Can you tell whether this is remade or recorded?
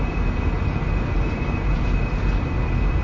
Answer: recorded